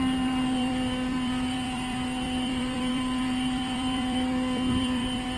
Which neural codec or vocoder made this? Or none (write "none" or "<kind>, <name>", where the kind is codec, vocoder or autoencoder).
vocoder, BigVGAN v2